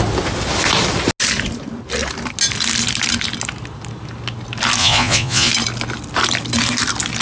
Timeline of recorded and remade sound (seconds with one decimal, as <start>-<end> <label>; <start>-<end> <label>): 0.0-4.8 recorded; 4.8-5.5 remade; 5.5-7.2 recorded